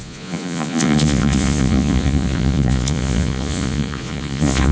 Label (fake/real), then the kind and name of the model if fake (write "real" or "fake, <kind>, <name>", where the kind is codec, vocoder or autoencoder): fake, vocoder, Vocos